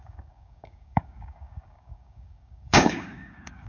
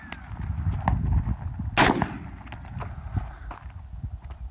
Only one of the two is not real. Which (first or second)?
first